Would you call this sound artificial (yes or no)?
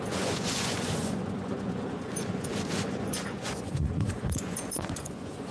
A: yes